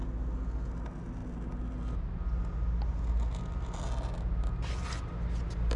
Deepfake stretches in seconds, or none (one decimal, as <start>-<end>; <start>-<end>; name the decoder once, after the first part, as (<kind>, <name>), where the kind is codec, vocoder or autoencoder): none